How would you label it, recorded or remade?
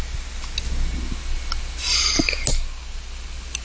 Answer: recorded